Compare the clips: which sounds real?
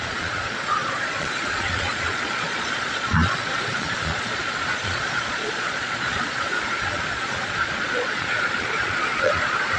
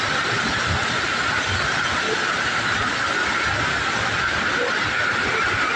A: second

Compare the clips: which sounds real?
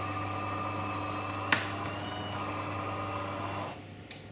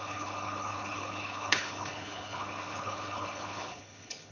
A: first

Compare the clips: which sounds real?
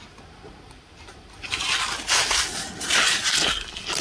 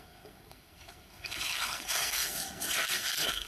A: first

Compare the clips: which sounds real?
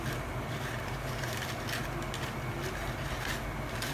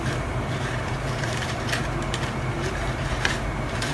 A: first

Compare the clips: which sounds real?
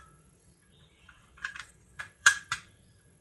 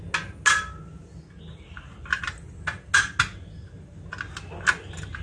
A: second